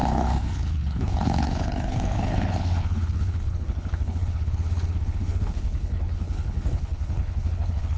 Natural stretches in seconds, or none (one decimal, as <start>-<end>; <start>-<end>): none